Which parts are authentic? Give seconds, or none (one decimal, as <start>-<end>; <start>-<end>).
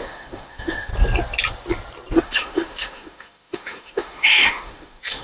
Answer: 0.9-2.2